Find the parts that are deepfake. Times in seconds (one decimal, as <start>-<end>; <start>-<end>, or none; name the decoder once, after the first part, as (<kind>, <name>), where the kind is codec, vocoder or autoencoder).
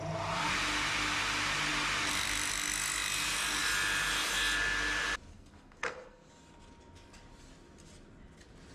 5.3-6.3 (codec, SNAC)